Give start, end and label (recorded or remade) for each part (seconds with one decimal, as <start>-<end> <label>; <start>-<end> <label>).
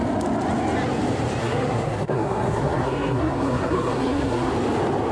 0.0-1.4 recorded; 1.4-4.5 remade; 4.5-5.1 recorded